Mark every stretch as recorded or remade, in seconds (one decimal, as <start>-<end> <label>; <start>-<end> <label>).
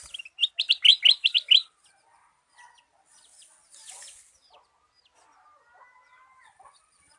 0.0-7.2 recorded